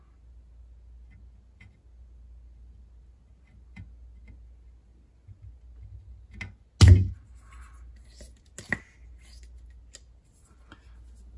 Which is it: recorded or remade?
recorded